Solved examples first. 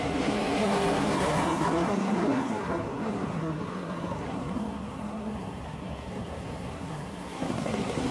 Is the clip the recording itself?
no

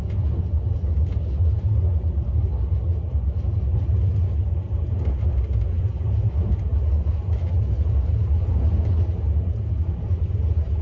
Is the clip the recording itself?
yes